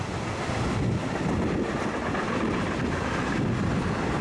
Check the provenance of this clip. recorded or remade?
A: recorded